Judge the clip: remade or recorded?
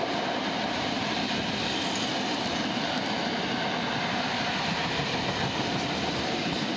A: recorded